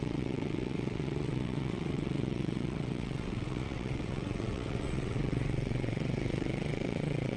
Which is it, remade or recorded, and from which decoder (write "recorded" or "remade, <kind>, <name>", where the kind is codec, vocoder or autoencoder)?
remade, vocoder, WaveNeXt